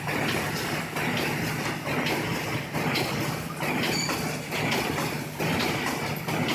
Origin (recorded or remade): recorded